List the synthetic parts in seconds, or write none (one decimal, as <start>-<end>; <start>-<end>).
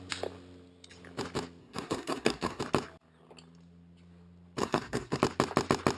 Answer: 1.6-2.6; 4.6-5.2